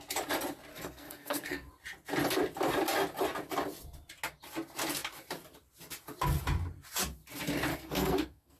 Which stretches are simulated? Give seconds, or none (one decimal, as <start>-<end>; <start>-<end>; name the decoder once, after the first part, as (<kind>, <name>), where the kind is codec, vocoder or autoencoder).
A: 0.7-1.7 (codec, SNAC); 7.7-8.6